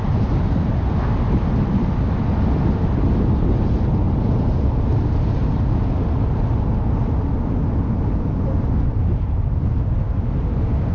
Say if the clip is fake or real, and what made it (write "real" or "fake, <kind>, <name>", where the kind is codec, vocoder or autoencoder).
real